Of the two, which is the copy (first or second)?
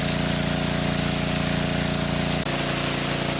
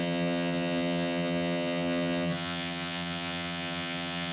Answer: second